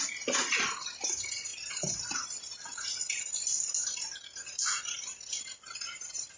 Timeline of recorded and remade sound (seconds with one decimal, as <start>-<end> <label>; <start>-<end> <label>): 0.0-6.4 recorded